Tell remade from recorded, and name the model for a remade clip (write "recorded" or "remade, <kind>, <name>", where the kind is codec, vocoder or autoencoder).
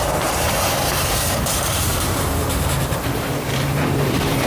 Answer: remade, vocoder, BigVGAN v2